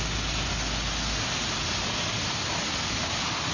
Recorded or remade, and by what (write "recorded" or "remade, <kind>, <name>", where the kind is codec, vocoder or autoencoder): recorded